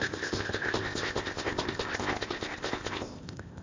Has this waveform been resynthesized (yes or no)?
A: yes